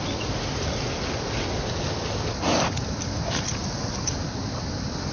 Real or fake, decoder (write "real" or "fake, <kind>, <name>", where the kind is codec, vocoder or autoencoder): real